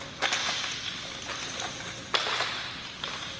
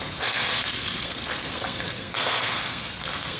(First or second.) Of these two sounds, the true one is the first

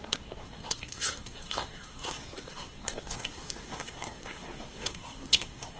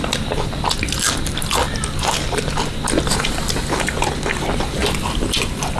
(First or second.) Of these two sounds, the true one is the second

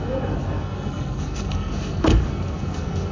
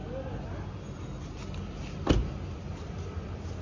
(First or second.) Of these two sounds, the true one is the second